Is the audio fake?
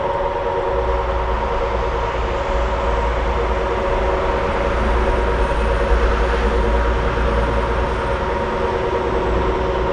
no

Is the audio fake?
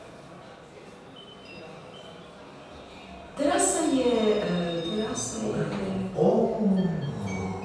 no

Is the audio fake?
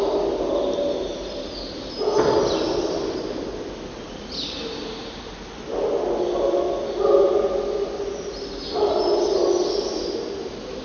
no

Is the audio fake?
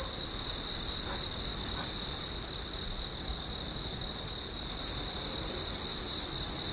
no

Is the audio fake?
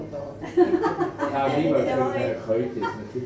no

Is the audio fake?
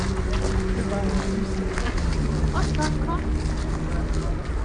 no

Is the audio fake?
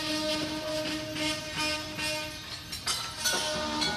no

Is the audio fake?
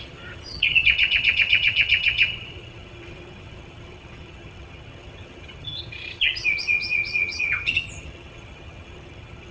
yes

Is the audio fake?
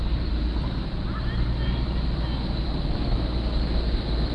no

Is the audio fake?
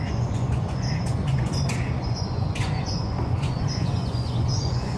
yes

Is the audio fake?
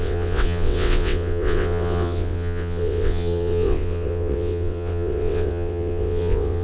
yes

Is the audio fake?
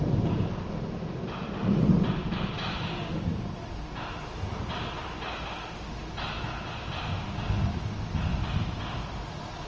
no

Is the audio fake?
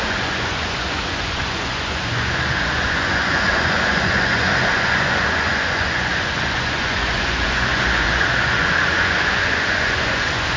yes